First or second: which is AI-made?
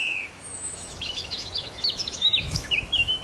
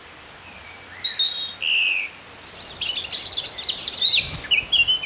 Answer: first